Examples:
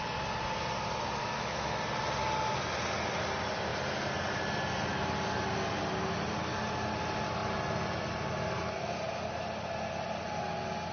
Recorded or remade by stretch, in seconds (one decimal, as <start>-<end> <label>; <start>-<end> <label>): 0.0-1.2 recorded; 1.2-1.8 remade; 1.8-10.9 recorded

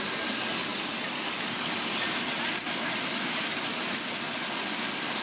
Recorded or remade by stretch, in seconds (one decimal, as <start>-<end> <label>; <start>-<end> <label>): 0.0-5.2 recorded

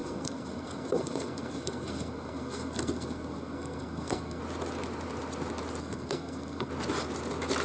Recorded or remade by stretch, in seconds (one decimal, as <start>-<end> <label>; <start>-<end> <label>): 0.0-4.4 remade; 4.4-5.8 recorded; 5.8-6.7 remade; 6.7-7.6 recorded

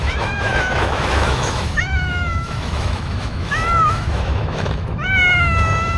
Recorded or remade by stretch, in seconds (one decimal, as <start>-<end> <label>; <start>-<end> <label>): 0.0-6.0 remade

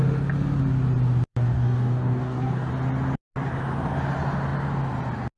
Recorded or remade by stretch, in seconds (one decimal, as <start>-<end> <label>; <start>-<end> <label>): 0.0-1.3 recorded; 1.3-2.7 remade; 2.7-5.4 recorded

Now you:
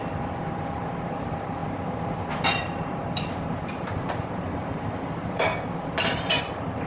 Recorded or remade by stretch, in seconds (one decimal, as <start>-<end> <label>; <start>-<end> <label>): 0.0-5.5 remade; 5.5-6.4 recorded; 6.4-6.9 remade

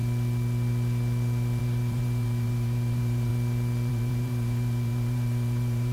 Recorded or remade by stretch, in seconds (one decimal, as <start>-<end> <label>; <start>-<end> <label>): 0.0-1.6 recorded; 1.6-3.3 remade; 3.3-3.9 recorded; 3.9-5.9 remade